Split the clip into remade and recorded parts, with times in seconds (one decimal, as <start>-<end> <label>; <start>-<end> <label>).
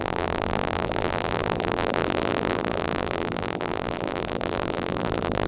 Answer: 0.0-5.5 remade